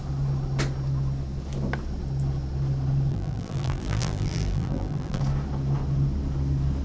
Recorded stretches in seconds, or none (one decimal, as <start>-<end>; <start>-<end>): 0.0-3.1; 5.2-6.8